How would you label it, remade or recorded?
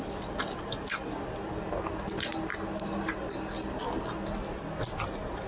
recorded